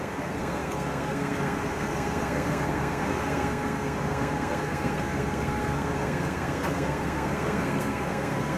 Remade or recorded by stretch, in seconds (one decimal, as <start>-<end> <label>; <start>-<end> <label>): 0.0-8.6 remade